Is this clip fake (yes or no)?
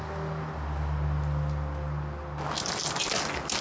no